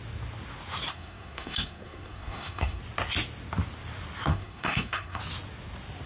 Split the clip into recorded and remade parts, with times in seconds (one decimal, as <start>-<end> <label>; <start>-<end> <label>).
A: 0.0-0.9 recorded; 0.9-2.8 remade; 2.8-4.3 recorded; 4.3-5.2 remade; 5.2-6.1 recorded